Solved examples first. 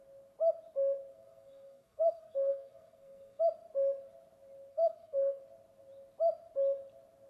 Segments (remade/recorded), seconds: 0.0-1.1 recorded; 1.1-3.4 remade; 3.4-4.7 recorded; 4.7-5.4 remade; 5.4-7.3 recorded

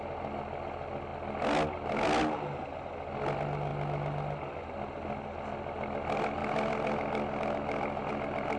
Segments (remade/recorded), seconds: 0.0-8.6 recorded

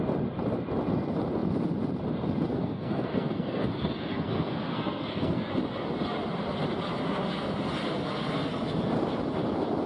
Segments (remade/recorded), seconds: 0.0-2.5 recorded; 2.5-5.5 remade; 5.5-9.9 recorded

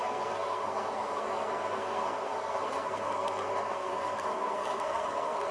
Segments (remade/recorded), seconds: 0.0-5.5 remade